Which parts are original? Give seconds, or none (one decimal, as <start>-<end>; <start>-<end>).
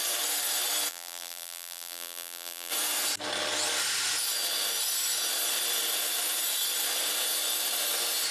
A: 0.0-0.9; 2.7-8.3